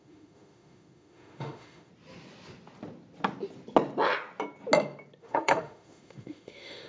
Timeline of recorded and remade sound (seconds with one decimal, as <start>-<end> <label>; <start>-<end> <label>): 0.0-1.9 remade; 1.9-5.2 recorded; 5.2-6.9 remade